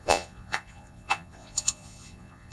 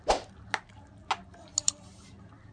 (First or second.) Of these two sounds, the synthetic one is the first